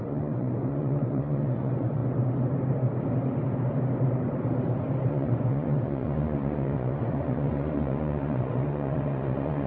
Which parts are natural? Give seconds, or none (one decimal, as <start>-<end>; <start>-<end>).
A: 2.0-5.1